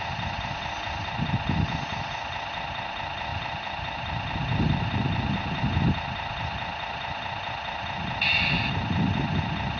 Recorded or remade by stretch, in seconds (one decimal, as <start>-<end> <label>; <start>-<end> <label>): 0.0-3.3 recorded; 3.3-5.6 remade; 5.6-9.8 recorded